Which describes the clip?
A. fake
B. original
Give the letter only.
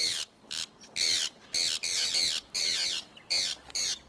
B